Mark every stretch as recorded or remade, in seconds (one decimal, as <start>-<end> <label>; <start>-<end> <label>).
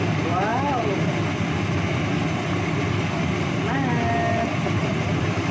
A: 0.0-5.5 recorded